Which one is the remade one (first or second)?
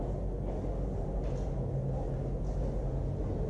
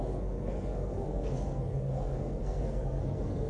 second